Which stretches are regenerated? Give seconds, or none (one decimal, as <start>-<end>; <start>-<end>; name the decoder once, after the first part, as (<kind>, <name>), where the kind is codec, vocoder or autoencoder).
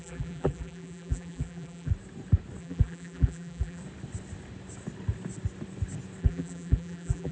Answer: 0.0-1.9 (vocoder, BigVGAN v2); 2.6-3.8; 6.2-7.3